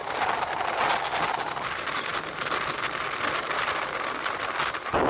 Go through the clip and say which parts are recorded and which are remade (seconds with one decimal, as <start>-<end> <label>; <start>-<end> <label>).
0.0-5.1 recorded